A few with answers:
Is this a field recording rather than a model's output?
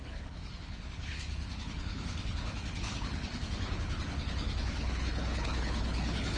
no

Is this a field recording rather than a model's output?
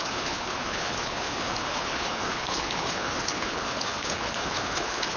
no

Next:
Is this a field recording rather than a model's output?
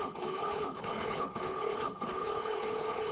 no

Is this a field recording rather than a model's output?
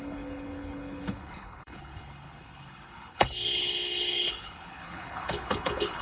no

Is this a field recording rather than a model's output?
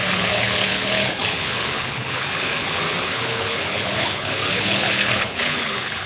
no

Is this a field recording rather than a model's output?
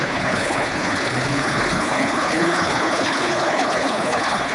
no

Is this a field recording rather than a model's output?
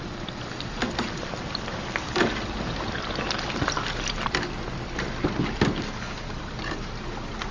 yes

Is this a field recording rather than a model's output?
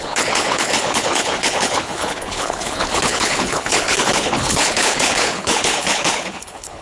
no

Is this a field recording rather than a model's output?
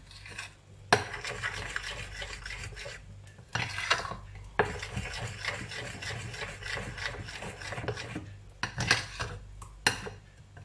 yes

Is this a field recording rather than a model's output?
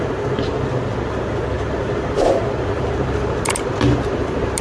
yes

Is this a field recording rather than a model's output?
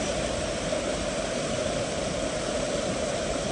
yes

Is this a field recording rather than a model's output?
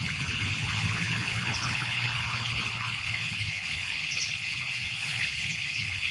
no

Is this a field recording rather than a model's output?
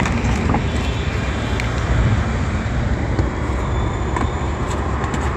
yes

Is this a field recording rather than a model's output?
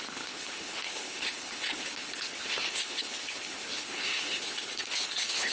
no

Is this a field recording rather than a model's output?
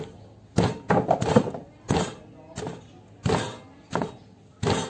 yes